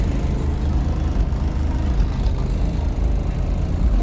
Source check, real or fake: real